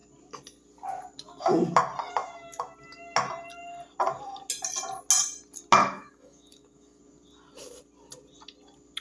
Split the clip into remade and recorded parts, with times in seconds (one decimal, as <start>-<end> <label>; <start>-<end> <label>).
0.0-5.8 recorded; 5.8-7.0 remade; 7.0-9.0 recorded